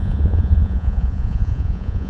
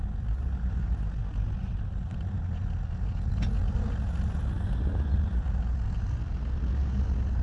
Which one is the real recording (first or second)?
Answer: second